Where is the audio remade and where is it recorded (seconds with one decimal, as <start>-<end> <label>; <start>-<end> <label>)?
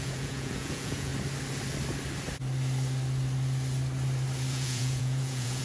0.0-1.1 remade; 1.1-4.5 recorded; 4.5-5.6 remade